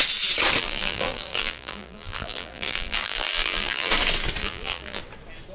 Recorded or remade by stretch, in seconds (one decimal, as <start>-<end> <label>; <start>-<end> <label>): 0.0-0.6 recorded; 0.6-3.9 remade; 3.9-4.4 recorded; 4.4-5.0 remade; 5.0-5.5 recorded